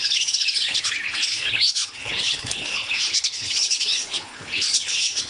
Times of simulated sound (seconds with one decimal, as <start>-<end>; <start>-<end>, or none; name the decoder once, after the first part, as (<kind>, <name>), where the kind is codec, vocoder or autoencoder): 0.0-5.3 (codec, HILCodec)